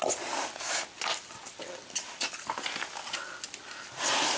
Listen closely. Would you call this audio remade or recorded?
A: recorded